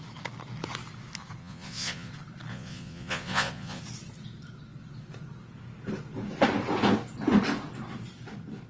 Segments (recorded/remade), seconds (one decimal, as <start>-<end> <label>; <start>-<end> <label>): 0.0-1.4 recorded; 1.4-2.1 remade; 2.1-2.5 recorded; 2.5-3.8 remade; 3.8-8.7 recorded